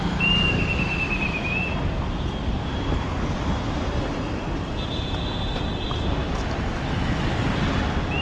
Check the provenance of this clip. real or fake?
real